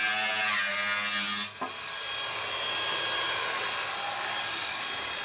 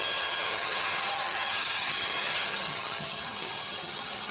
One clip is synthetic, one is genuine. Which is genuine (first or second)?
first